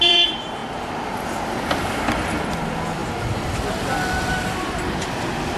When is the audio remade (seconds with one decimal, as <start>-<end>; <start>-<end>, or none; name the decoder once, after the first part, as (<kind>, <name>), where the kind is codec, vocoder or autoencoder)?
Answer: 0.0-3.0 (vocoder, BigVGAN v2); 4.3-5.6